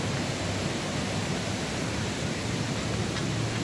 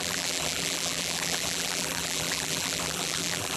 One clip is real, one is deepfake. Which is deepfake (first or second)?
second